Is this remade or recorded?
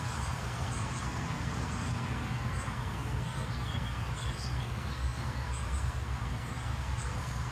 remade